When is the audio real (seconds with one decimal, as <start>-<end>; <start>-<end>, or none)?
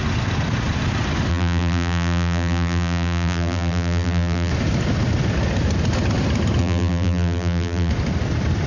0.0-1.3; 4.5-6.6; 7.9-8.7